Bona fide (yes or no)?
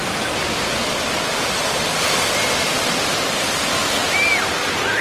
yes